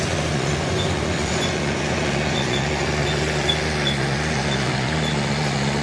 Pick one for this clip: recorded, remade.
remade